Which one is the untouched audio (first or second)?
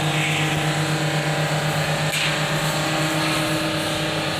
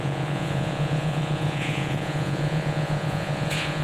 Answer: first